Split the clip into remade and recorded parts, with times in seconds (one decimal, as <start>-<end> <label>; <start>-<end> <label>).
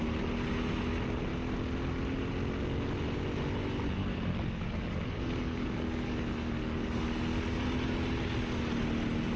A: 0.0-4.0 recorded; 4.0-7.0 remade; 7.0-9.4 recorded